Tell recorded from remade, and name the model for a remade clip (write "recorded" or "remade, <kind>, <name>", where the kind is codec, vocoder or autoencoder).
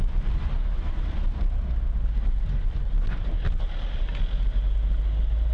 recorded